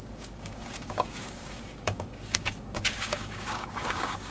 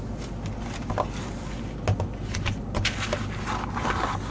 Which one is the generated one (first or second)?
first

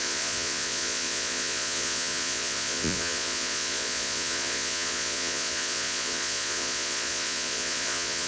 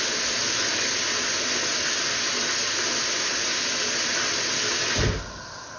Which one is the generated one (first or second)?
first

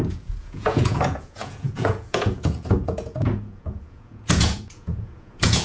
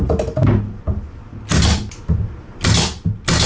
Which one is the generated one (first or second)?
first